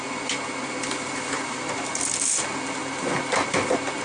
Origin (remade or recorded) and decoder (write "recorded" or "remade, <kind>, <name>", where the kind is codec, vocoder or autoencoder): recorded